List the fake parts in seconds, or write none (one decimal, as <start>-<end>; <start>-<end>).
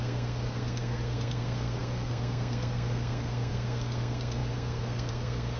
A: 0.0-5.6